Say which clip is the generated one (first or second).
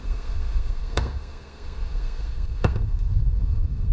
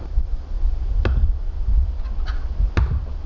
first